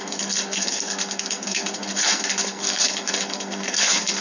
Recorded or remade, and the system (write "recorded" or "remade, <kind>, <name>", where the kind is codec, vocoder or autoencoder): remade, codec, SNAC